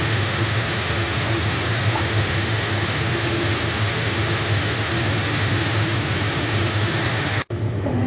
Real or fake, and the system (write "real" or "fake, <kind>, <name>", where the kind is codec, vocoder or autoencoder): fake, autoencoder, DAC-VAE